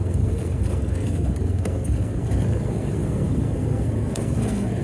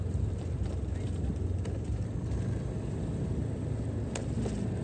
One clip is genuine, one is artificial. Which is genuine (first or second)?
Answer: second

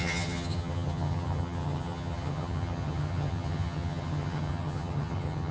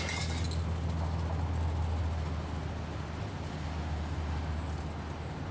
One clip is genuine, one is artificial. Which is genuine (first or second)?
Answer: second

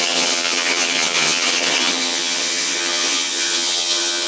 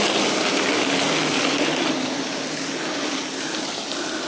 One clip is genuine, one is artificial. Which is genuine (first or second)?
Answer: second